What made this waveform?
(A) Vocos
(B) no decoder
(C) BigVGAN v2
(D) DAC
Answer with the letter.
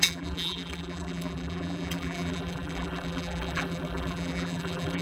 C